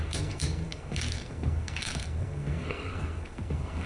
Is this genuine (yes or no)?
no